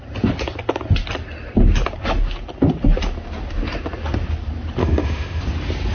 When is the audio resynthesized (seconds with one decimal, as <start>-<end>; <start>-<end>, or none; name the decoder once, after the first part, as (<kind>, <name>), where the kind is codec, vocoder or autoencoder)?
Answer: 4.8-5.4 (autoencoder, DAC-VAE)